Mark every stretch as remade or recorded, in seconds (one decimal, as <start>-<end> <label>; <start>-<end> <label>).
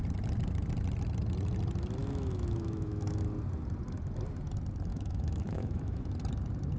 0.0-2.0 recorded; 2.0-3.2 remade; 3.2-4.9 recorded; 4.9-6.1 remade; 6.1-6.8 recorded